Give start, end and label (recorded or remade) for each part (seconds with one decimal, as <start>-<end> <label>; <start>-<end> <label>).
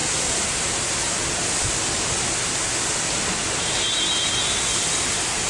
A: 0.0-5.5 recorded